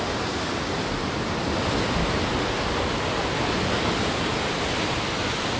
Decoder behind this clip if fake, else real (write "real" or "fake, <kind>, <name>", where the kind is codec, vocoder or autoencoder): real